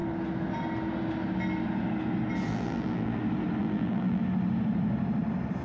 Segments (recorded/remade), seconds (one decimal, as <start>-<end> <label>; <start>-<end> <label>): 0.0-2.5 recorded; 2.5-3.2 remade; 3.2-3.6 recorded; 3.6-4.2 remade; 4.2-5.6 recorded